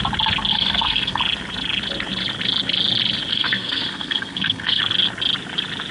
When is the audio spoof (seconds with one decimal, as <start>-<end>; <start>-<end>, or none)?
0.5-1.2; 3.3-4.8